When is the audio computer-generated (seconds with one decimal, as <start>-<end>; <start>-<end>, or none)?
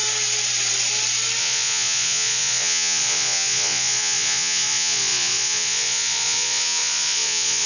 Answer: 1.4-7.7